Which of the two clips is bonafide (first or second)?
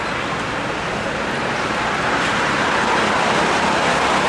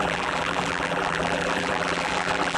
first